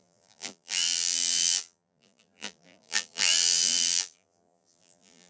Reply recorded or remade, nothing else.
remade